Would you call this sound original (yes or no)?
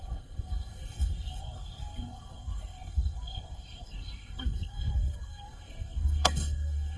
no